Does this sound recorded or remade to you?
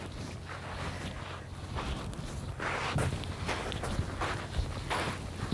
recorded